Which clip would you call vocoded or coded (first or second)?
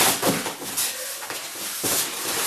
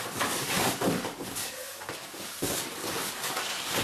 second